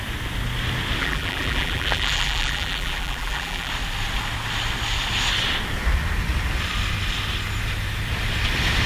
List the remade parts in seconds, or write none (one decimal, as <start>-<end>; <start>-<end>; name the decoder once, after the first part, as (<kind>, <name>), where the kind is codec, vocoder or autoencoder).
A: 1.0-3.7 (vocoder, BigVGAN v2)